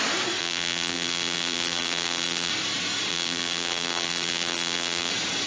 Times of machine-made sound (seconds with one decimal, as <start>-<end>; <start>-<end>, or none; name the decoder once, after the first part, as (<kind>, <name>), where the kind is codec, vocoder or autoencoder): 0.4-2.5 (vocoder, BigVGAN v2); 3.1-5.1